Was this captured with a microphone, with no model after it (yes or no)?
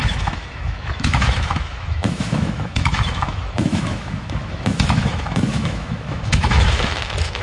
no